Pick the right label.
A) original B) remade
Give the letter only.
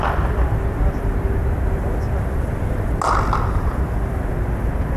A